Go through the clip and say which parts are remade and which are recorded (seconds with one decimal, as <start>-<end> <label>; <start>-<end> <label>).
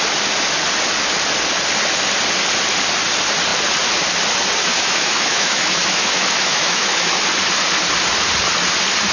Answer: 0.0-4.7 recorded; 4.7-7.1 remade; 7.1-9.1 recorded